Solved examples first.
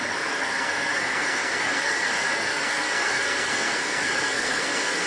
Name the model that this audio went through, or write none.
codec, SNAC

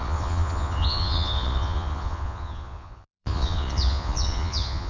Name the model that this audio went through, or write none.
vocoder, Vocos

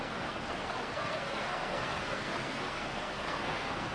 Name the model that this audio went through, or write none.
codec, SNAC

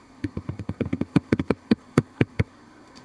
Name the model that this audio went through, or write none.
codec, SNAC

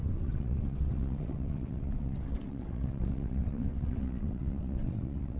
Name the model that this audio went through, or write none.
vocoder, WaveNeXt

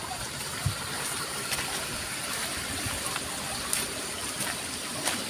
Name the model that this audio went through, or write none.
vocoder, BigVGAN v2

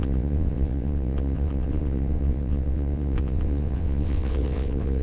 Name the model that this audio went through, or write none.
vocoder, WaveNeXt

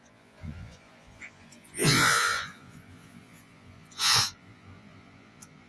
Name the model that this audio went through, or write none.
vocoder, Vocos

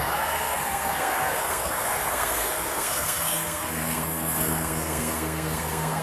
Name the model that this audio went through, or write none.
codec, SNAC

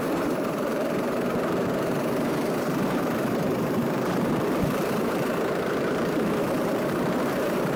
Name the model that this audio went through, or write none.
vocoder, BigVGAN v2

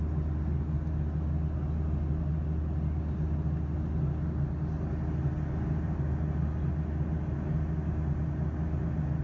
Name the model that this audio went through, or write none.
none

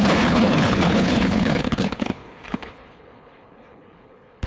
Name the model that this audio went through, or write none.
codec, HILCodec